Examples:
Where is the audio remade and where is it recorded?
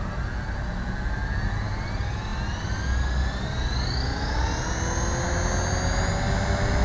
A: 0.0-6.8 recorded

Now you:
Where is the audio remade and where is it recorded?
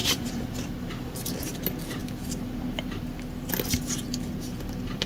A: 0.0-0.7 remade; 0.7-5.1 recorded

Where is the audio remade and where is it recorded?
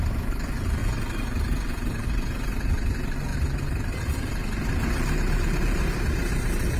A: 0.0-0.8 recorded; 0.8-2.1 remade; 2.1-3.3 recorded; 3.3-6.8 remade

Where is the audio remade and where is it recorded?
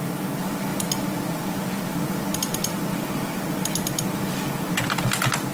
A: 0.0-5.5 recorded